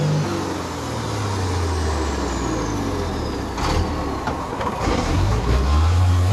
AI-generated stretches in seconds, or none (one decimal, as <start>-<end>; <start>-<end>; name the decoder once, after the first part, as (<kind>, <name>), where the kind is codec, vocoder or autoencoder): 4.4-6.3 (codec, SNAC)